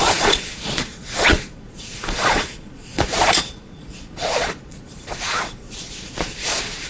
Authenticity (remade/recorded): remade